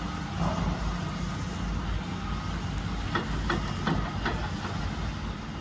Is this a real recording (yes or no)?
yes